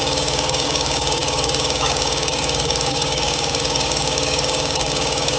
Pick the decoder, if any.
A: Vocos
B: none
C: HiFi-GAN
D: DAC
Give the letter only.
D